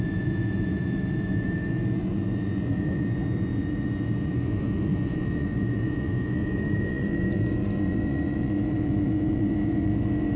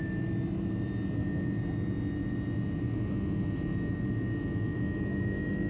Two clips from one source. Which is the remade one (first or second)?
first